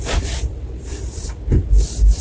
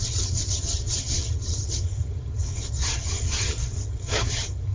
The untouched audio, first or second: first